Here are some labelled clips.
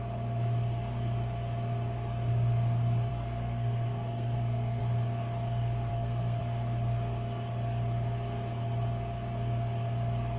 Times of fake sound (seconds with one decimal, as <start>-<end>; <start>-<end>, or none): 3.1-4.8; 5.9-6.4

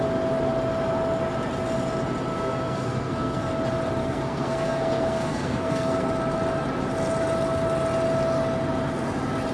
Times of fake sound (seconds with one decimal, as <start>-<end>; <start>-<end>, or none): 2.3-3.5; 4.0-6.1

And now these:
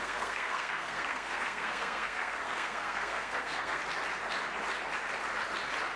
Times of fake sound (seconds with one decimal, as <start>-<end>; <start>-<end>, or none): 0.0-3.8

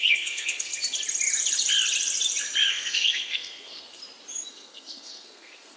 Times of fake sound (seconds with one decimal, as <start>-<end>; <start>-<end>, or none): 0.0-0.7; 2.7-4.0; 4.5-5.8

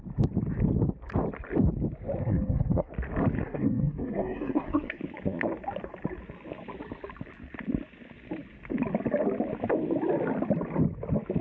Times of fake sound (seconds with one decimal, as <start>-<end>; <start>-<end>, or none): 2.2-2.9; 3.4-5.0

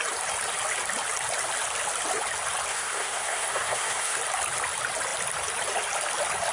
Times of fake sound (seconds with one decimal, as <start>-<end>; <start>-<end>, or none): 2.7-4.2

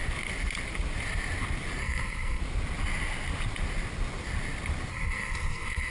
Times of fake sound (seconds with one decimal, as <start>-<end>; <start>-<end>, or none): 1.8-2.4; 4.9-5.9